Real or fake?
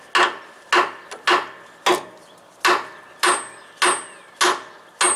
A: real